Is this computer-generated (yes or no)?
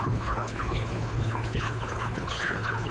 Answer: yes